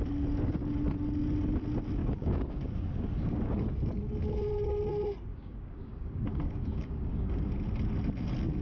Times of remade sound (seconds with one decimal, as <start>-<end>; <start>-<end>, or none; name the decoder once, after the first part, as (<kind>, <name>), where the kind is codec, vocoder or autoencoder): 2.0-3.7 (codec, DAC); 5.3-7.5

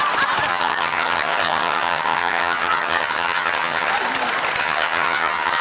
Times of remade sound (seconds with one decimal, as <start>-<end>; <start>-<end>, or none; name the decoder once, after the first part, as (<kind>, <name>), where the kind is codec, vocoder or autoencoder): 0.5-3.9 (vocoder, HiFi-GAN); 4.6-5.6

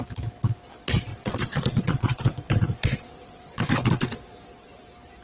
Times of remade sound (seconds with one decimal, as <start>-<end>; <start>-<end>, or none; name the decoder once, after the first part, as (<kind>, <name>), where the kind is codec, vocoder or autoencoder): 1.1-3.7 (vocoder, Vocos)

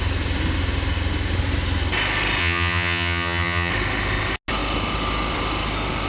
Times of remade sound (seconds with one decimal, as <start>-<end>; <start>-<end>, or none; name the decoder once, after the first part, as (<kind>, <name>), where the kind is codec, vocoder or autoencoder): 2.4-3.7 (vocoder, HiFi-GAN)

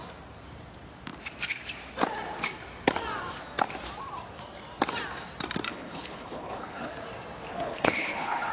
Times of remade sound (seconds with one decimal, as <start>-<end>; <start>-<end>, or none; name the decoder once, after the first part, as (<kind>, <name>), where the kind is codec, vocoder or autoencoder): 5.7-6.9 (codec, HILCodec); 7.5-8.5

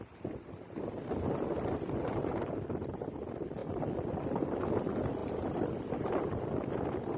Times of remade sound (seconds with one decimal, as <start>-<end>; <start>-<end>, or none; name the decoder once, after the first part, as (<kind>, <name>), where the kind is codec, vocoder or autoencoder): none

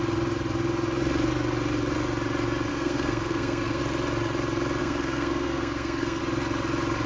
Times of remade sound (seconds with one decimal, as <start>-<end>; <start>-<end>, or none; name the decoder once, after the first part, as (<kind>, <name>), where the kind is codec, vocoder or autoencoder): 2.7-3.8 (codec, SNAC); 4.8-6.2

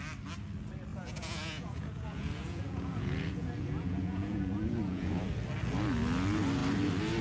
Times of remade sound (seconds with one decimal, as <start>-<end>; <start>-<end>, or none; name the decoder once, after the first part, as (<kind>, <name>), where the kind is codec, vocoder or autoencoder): 0.9-5.2 (vocoder, Vocos)